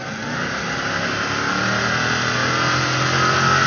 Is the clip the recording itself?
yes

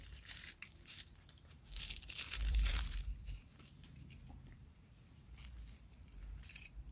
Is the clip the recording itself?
no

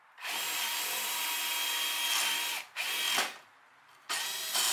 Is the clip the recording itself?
yes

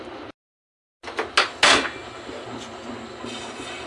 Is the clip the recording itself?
yes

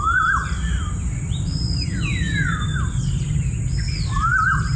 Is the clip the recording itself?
yes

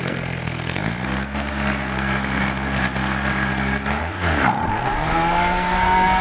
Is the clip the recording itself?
no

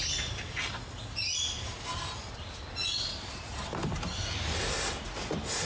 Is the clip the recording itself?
yes